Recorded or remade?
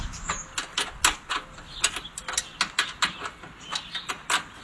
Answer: recorded